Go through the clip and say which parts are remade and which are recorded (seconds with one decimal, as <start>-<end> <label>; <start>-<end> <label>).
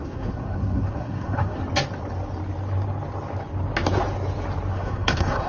0.0-1.6 remade; 1.6-4.7 recorded; 4.7-5.5 remade